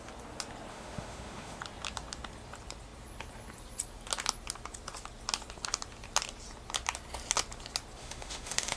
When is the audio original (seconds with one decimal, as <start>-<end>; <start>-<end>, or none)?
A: 0.0-0.7; 1.6-8.0